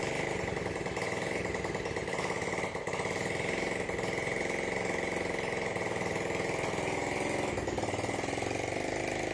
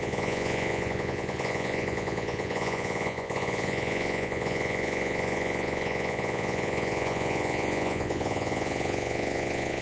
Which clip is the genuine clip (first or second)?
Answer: first